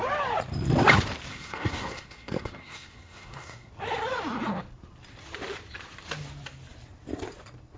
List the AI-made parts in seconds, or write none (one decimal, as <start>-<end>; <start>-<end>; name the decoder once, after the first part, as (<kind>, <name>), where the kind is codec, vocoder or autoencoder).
1.3-3.7 (codec, SNAC)